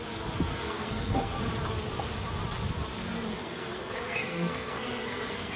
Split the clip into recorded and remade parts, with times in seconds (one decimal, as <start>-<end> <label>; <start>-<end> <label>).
0.0-0.5 recorded; 0.5-1.4 remade; 1.4-3.4 recorded; 3.4-5.6 remade